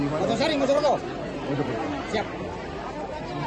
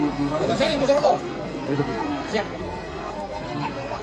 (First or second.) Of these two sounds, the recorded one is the first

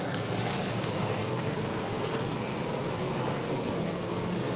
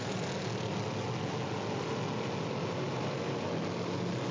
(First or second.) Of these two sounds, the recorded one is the second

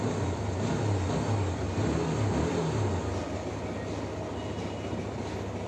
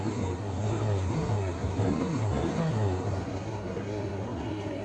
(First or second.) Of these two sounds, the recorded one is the first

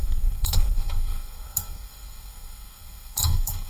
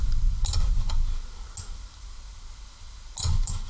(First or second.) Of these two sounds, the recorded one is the second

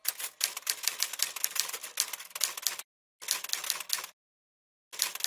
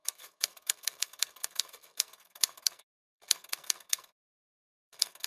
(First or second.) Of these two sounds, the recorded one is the first